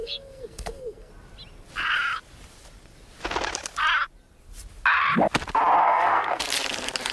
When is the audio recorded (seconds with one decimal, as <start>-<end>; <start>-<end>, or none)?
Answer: 1.1-5.8; 6.4-7.1